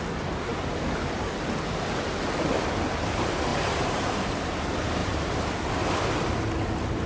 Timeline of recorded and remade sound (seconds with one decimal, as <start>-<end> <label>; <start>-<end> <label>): 0.0-3.5 recorded; 3.5-4.6 remade; 4.6-5.0 recorded; 5.0-5.5 remade; 5.5-7.1 recorded